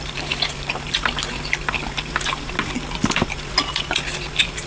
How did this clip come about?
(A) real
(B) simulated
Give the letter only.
A